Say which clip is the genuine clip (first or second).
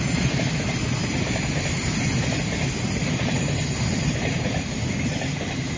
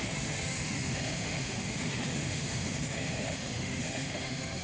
first